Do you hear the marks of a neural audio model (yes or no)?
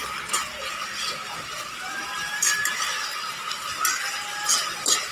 no